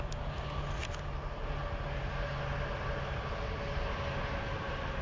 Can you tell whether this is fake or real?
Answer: real